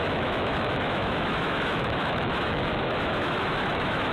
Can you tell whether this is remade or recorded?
remade